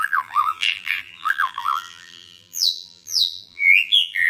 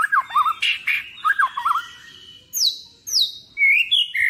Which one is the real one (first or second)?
second